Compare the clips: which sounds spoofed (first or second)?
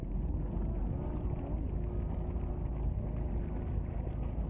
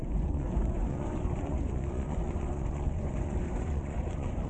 second